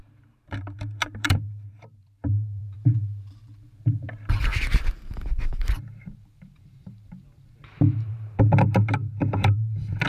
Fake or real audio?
fake